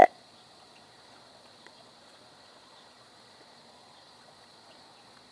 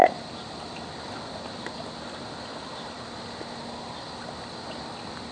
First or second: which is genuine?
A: second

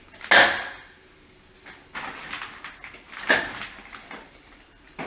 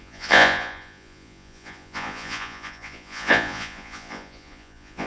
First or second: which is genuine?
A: first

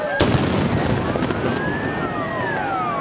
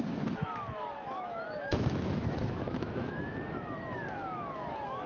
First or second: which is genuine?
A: first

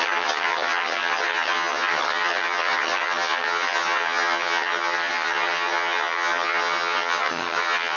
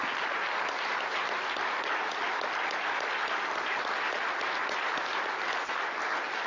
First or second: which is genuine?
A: second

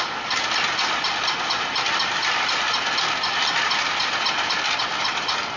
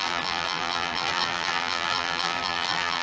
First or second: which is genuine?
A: first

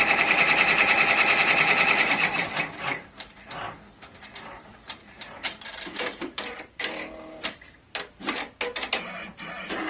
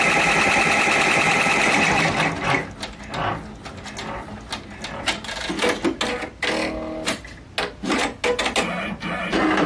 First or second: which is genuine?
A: second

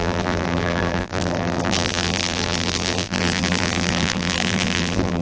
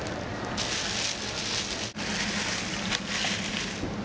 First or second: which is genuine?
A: second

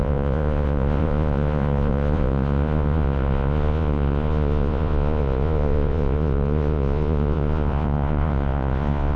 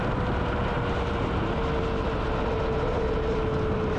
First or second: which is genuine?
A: second